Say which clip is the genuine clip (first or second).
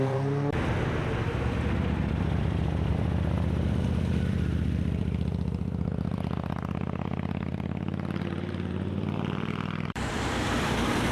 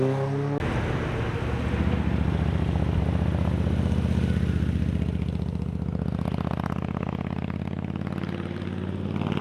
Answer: second